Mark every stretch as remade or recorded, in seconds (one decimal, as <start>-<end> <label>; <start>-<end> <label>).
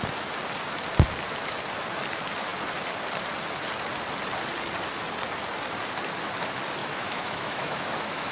0.0-6.8 recorded; 6.8-8.3 remade